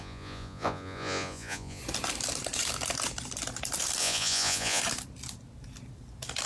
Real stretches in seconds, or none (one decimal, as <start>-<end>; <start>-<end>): 1.8-4.0; 4.8-6.5